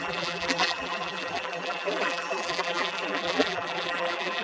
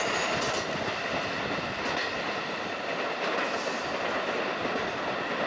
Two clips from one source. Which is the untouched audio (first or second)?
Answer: second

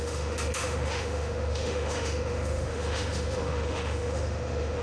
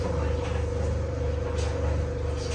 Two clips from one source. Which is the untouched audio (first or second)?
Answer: second